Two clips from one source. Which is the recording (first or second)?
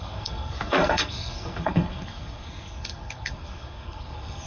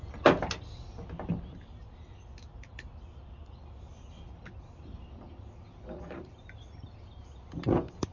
second